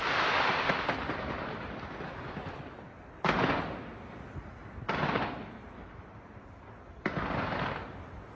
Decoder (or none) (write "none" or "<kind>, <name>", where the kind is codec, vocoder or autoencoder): none